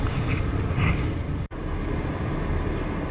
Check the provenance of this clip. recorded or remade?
recorded